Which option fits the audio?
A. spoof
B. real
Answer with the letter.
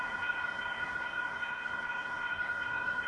A